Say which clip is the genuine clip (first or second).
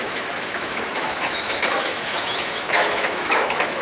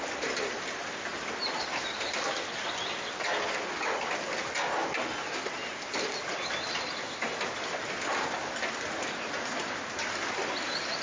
second